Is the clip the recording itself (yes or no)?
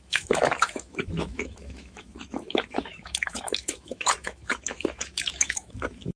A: no